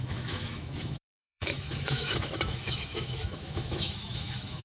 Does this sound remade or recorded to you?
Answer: remade